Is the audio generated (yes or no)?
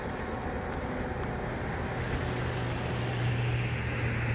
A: no